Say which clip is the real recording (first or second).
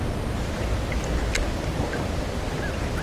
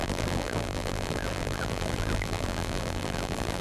first